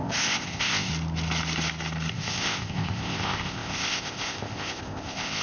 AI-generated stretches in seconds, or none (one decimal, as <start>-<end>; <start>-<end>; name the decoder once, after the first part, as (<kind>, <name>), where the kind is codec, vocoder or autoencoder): 0.0-0.9 (codec, ZipCodec); 2.1-5.4